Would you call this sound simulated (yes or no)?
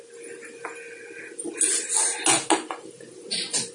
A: no